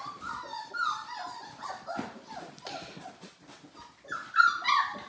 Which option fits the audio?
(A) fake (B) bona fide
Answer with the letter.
B